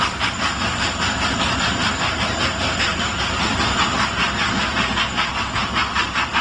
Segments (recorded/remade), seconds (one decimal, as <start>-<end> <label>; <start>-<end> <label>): 0.0-5.6 remade; 5.6-6.4 recorded